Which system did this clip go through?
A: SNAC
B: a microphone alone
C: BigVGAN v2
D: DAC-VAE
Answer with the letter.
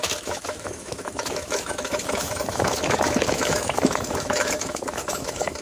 D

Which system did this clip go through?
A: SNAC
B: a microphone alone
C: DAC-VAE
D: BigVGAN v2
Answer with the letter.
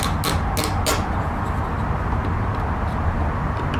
B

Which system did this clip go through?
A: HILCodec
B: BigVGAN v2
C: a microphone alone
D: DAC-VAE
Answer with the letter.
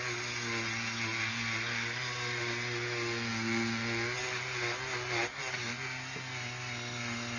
C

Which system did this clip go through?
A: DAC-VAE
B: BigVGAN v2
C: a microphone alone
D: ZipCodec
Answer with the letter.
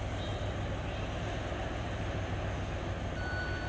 C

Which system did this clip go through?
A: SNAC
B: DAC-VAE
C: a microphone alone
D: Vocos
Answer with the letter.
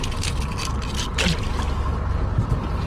C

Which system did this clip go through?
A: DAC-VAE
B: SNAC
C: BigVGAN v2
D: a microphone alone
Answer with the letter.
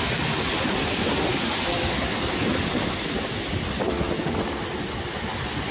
D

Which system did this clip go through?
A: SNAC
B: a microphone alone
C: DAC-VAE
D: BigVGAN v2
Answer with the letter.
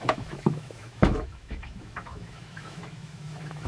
C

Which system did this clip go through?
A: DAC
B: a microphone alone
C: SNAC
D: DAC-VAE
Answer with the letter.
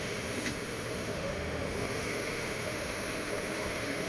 D